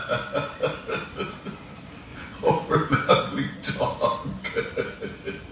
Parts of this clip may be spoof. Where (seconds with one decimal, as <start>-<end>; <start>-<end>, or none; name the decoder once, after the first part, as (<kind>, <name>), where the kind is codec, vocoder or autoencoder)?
2.1-3.1 (vocoder, Vocos)